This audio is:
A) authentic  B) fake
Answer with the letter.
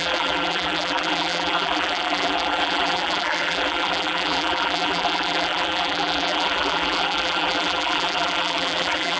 B